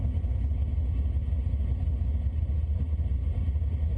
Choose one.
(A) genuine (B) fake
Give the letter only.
A